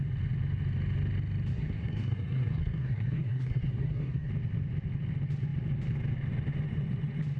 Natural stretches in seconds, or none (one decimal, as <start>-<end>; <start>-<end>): 0.0-1.5; 4.3-7.4